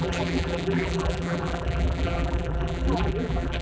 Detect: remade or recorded remade